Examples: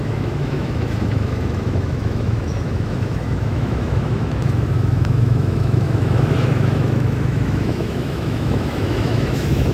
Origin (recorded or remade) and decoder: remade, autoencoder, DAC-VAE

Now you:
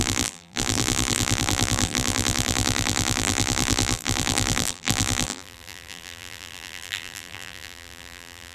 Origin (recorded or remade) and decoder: remade, vocoder, BigVGAN v2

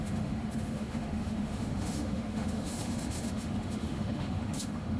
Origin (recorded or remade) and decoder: remade, autoencoder, DAC-VAE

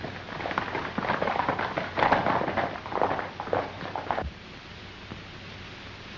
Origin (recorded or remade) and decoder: recorded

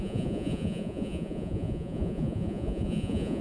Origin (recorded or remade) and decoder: remade, vocoder, Vocos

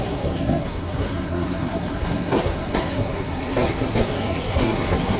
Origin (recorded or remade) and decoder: remade, codec, SNAC